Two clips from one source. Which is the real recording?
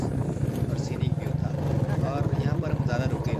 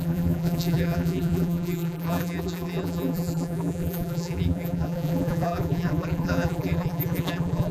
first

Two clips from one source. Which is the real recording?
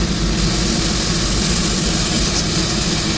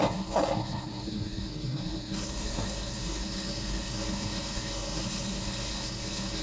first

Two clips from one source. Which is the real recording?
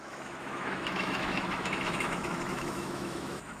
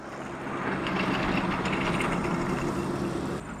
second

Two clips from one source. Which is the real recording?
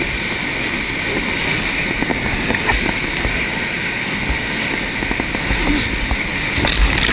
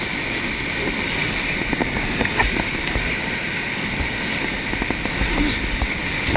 first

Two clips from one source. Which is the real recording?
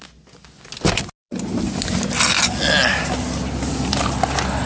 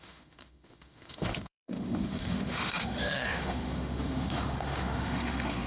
first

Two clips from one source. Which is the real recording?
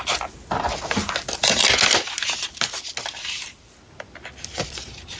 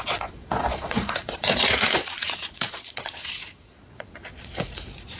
first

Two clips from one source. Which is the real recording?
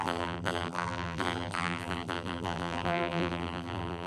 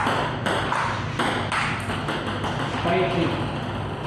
second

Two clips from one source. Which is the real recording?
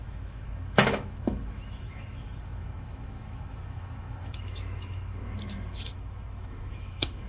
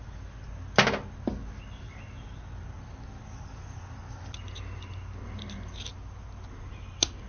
second